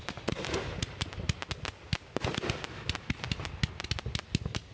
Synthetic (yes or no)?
no